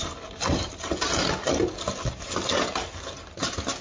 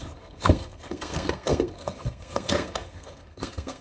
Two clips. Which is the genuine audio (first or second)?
first